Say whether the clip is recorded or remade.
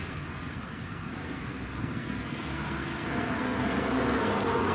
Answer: remade